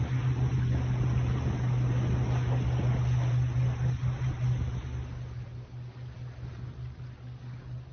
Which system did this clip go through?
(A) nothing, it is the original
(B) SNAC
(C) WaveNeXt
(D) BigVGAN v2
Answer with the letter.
A